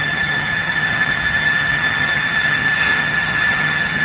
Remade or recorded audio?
remade